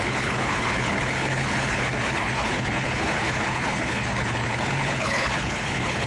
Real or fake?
fake